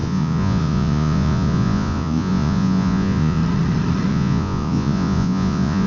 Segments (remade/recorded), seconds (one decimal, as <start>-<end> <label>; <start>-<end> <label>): 0.0-3.4 remade; 3.4-4.1 recorded; 4.1-5.9 remade